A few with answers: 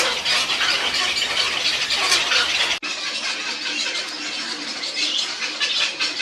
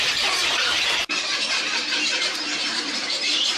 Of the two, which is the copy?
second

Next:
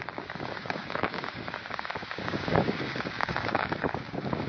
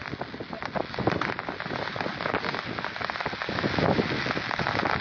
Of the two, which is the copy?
first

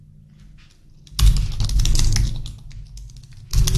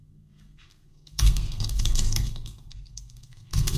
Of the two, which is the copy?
second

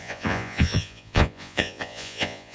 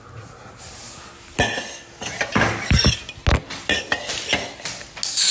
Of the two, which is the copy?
first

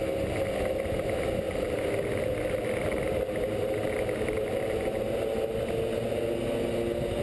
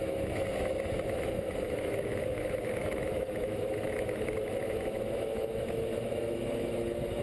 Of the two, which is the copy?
second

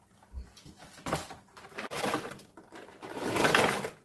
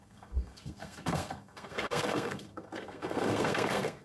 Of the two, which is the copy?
second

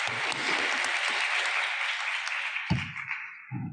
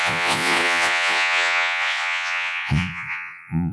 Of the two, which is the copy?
second